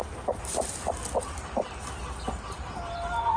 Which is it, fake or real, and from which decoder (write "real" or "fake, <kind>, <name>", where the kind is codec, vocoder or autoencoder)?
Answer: fake, vocoder, BigVGAN v2